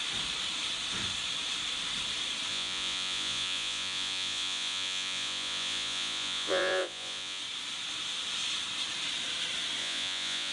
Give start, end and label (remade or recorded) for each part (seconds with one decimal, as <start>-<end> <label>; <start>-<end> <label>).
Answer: 0.0-2.5 recorded; 2.5-7.4 remade; 7.4-9.8 recorded; 9.8-10.5 remade